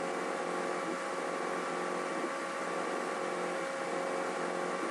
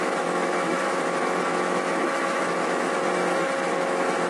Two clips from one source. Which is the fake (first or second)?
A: second